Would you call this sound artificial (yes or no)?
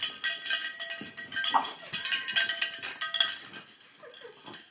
no